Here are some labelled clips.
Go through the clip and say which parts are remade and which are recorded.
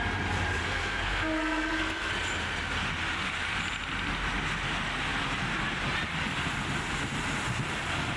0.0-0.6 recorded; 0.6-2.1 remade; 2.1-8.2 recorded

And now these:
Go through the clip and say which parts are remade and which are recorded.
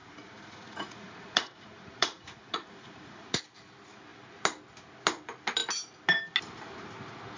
0.0-3.4 remade; 3.4-7.4 recorded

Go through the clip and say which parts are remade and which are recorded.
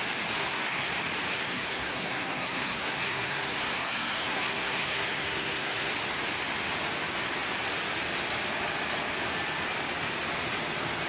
0.0-0.4 recorded; 0.4-0.9 remade; 0.9-1.3 recorded; 1.3-5.9 remade; 5.9-11.1 recorded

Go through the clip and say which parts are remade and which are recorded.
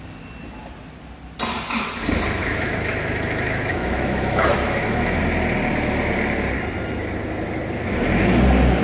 0.0-2.4 recorded; 2.4-5.2 remade; 5.2-8.8 recorded